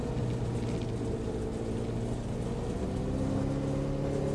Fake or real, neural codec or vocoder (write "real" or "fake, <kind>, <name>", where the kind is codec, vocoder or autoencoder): real